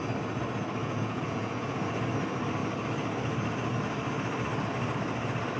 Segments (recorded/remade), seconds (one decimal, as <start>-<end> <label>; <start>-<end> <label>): 0.0-0.8 recorded; 0.8-2.0 remade; 2.0-5.6 recorded